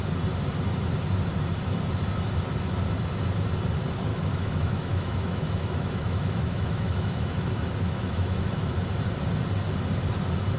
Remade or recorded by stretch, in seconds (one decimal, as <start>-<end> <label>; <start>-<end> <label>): 0.0-4.1 recorded; 4.1-8.8 remade; 8.8-10.6 recorded